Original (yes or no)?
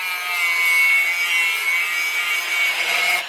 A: yes